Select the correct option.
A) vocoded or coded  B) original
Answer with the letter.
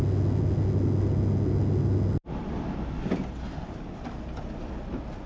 B